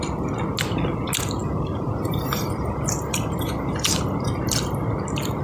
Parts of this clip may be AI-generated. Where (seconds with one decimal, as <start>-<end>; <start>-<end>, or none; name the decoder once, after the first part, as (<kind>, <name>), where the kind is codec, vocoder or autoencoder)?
1.4-4.0 (vocoder, BigVGAN v2)